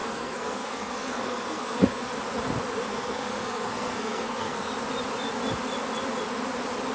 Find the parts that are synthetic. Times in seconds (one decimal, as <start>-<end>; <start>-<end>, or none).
0.0-2.1; 2.9-4.7